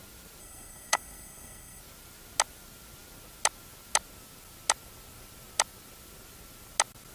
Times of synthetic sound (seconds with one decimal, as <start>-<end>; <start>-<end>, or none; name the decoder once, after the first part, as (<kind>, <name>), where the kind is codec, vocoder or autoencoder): 0.4-1.8 (codec, SNAC)